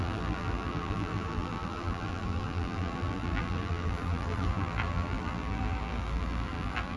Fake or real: fake